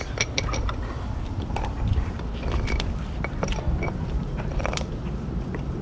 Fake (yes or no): yes